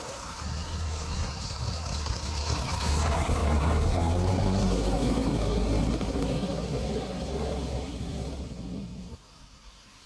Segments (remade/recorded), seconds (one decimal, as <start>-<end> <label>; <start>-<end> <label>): 0.0-10.1 remade